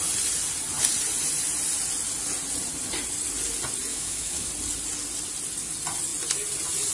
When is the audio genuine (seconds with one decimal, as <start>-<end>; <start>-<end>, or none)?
0.0-3.9; 4.5-6.9